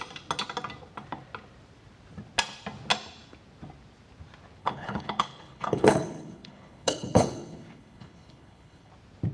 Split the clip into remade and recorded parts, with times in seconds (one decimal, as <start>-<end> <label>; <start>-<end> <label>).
0.0-4.6 recorded; 4.6-8.9 remade; 8.9-9.3 recorded